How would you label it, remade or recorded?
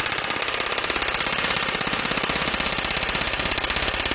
recorded